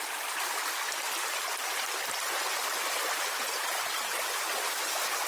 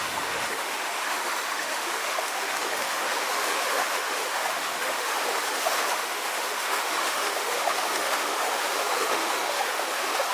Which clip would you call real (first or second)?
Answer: first